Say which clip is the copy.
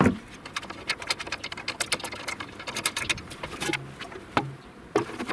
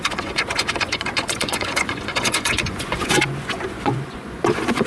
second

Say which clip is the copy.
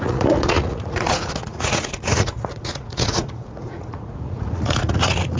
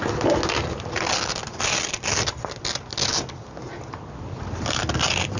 first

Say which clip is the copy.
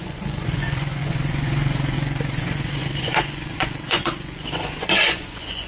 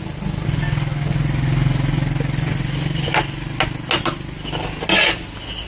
first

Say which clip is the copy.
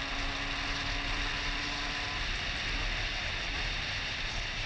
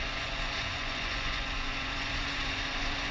second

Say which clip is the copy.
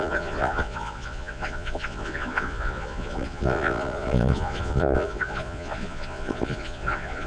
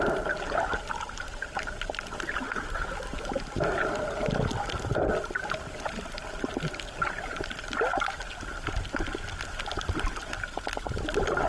first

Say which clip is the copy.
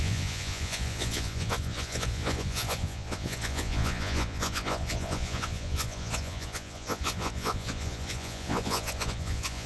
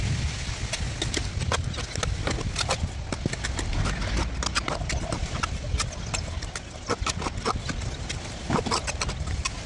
first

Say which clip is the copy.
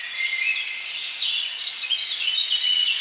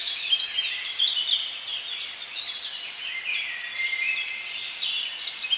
first